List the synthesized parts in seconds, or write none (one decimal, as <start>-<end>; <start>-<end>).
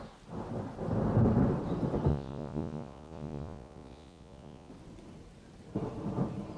2.1-4.7